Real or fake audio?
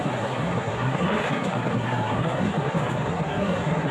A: fake